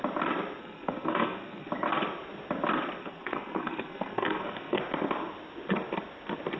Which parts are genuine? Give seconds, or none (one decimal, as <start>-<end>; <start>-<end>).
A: 0.0-0.6; 1.7-3.0; 4.8-6.6